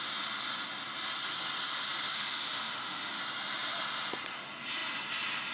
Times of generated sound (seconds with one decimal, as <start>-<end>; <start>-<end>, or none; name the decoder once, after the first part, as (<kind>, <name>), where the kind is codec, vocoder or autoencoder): 2.1-3.2 (autoencoder, DAC-VAE)